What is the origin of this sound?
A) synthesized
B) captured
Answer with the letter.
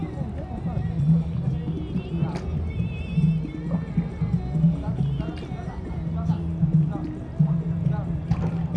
B